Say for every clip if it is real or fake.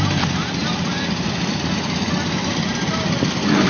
real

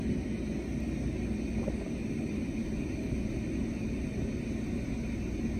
real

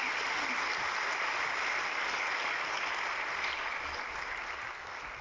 real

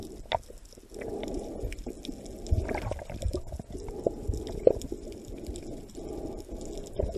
real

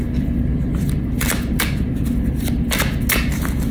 real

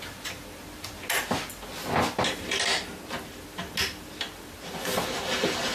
real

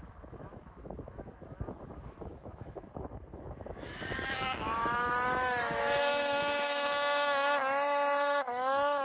fake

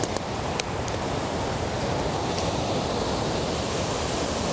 real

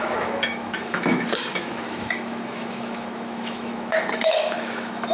fake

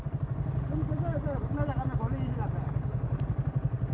real